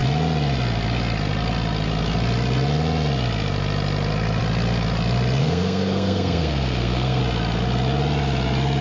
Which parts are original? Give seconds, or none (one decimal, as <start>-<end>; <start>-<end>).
0.0-5.4; 7.2-8.8